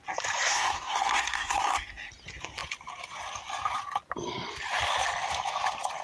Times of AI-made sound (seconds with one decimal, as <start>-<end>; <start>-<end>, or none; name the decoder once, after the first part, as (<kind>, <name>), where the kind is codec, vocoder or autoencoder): 0.5-2.1 (codec, SNAC)